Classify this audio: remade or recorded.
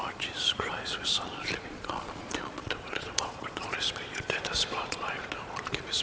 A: remade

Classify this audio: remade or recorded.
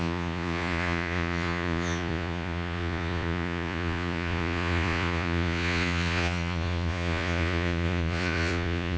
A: remade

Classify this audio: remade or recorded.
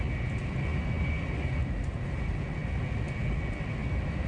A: recorded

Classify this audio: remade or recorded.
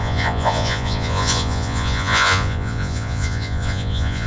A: remade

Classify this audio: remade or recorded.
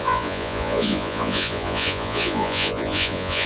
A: remade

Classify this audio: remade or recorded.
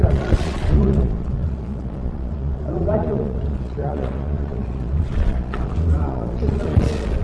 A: remade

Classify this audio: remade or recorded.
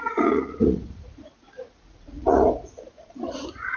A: remade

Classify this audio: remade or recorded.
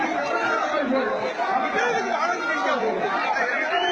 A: recorded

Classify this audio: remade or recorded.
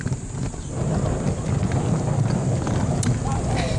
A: recorded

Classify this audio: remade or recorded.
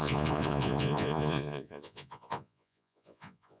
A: remade